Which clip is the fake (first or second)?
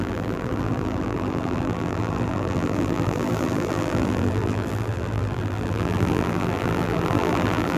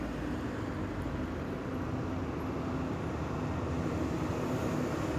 first